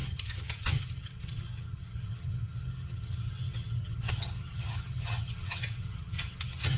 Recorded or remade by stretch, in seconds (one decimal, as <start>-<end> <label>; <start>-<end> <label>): 0.0-6.8 remade

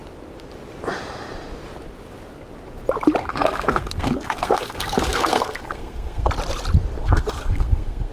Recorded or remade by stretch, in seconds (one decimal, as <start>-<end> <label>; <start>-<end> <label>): 0.0-3.2 recorded; 3.2-6.3 remade; 6.3-7.0 recorded; 7.0-8.1 remade